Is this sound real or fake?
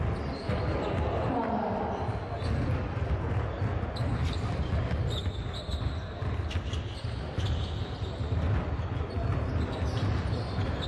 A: real